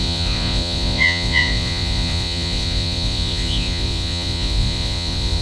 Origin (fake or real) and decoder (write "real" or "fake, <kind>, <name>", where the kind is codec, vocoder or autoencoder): fake, vocoder, Vocos